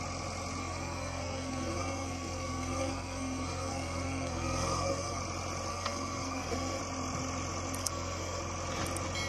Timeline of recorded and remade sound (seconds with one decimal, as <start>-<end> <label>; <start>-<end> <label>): 0.0-0.6 recorded; 0.6-5.2 remade; 5.2-5.7 recorded; 5.7-6.8 remade; 6.8-7.8 recorded; 7.8-8.4 remade; 8.4-9.3 recorded